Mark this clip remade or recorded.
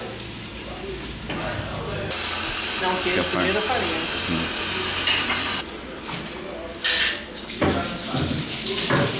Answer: recorded